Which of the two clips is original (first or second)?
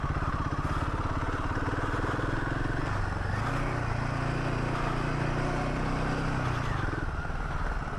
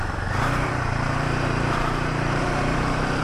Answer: first